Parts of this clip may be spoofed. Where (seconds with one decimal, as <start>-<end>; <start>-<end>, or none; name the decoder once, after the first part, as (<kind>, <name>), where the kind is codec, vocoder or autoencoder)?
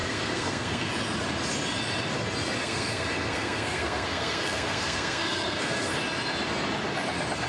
0.0-0.9 (codec, SNAC); 2.6-5.9